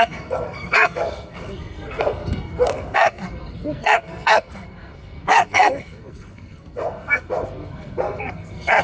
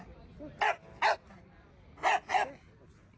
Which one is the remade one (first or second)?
first